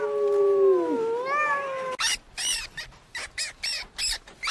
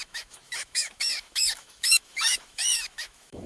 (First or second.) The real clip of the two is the first